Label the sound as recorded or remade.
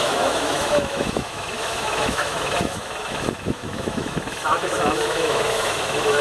remade